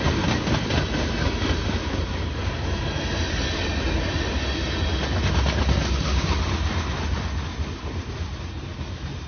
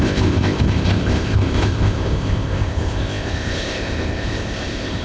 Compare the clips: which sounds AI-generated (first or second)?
second